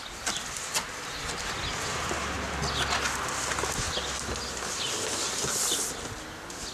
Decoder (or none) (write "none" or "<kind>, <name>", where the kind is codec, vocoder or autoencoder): none